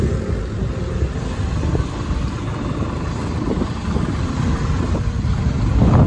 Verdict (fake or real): fake